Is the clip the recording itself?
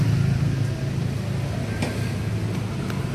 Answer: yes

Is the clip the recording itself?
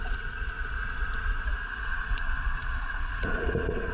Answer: no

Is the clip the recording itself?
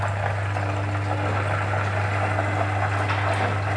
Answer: yes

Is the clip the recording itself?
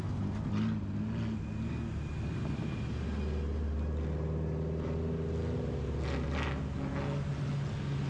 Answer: yes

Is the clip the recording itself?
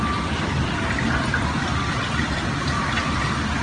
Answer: yes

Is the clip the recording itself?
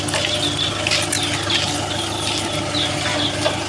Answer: yes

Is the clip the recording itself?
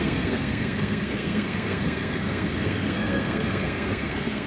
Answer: no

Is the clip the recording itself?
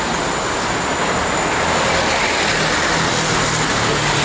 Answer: yes